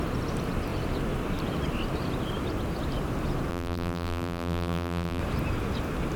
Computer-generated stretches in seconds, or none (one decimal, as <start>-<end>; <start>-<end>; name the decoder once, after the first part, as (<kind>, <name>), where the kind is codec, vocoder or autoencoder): 3.5-5.2 (vocoder, BigVGAN v2)